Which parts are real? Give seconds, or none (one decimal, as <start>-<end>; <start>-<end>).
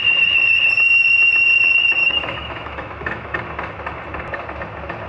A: 0.0-2.0; 3.4-5.1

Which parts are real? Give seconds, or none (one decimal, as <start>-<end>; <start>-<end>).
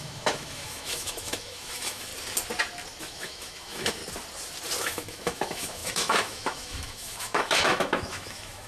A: 2.1-3.0; 4.0-4.8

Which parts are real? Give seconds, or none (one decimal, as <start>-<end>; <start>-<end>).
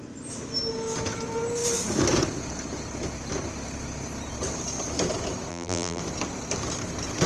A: 0.0-5.5; 6.0-7.3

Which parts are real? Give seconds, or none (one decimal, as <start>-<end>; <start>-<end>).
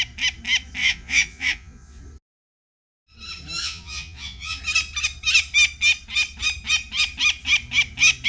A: 0.0-0.8; 2.0-3.6; 4.6-8.3